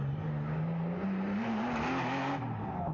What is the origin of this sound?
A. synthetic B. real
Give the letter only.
B